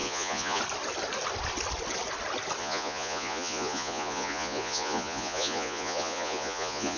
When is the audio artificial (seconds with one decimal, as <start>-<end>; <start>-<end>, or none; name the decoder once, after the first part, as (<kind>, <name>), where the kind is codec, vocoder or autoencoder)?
0.0-0.6 (vocoder, Vocos); 2.6-7.0